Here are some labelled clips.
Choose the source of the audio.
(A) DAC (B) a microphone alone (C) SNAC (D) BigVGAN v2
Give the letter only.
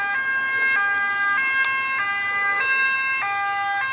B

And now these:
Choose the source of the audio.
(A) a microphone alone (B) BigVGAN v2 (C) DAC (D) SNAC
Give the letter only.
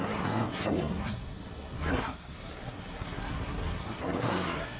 D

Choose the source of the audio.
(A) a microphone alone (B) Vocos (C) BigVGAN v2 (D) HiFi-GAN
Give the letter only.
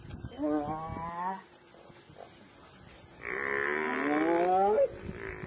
A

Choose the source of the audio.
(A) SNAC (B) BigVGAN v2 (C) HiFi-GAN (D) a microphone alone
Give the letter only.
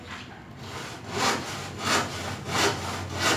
D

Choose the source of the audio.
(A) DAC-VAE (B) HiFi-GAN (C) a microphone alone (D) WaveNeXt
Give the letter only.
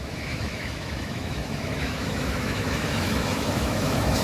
A